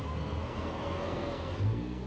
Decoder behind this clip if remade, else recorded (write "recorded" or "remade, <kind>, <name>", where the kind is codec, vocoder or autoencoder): remade, codec, SNAC